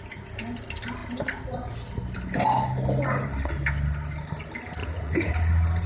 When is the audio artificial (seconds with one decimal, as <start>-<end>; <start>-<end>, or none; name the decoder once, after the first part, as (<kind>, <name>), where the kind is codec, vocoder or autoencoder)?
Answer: 4.8-5.3 (vocoder, Vocos)